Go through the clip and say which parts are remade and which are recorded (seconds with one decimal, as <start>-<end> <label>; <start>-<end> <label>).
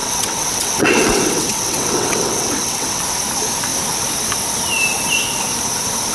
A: 0.0-3.0 remade; 3.0-6.1 recorded